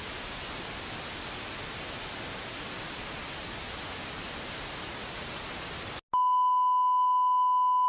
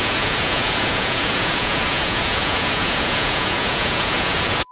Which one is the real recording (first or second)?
first